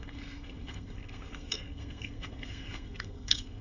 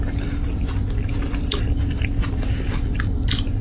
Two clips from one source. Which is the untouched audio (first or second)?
second